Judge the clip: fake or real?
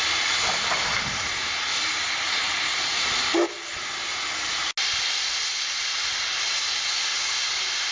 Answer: real